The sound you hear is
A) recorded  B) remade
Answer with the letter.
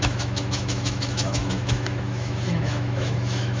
B